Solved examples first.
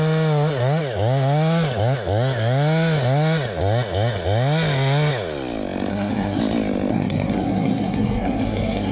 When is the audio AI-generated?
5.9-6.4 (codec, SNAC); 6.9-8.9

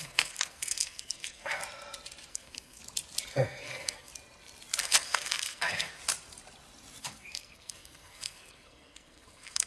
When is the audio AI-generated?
0.0-1.6 (codec, SNAC); 2.3-2.8; 3.3-4.1; 4.8-6.0; 7.0-9.7

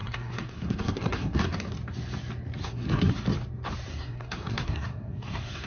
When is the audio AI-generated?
0.0-1.7 (codec, SNAC); 2.6-3.1; 3.9-5.7